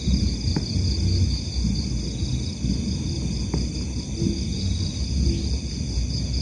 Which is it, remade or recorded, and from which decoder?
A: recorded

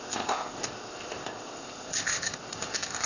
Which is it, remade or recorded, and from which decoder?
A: remade, codec, ZipCodec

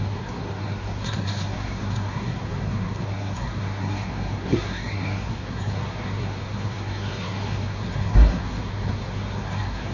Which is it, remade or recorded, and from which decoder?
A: remade, codec, SNAC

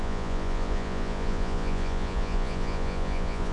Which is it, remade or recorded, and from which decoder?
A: remade, vocoder, Vocos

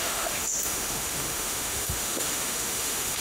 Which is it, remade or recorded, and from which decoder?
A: remade, autoencoder, DAC-VAE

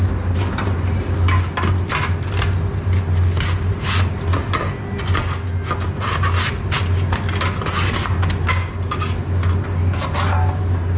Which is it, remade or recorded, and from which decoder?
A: recorded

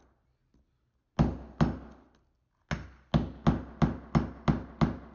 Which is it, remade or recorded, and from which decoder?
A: recorded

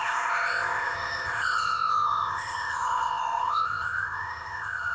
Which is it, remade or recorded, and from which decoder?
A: remade, codec, ZipCodec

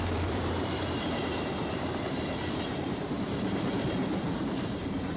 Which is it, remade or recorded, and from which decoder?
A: remade, vocoder, BigVGAN v2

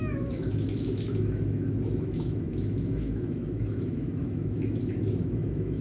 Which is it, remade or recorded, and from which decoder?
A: remade, autoencoder, DAC-VAE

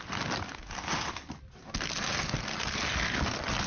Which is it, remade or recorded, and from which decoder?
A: recorded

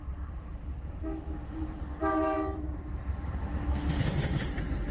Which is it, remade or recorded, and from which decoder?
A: recorded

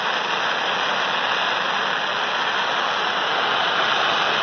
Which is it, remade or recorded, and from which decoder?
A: recorded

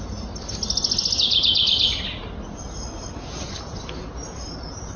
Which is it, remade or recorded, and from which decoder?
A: recorded